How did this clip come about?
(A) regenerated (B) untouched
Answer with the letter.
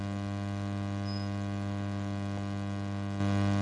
B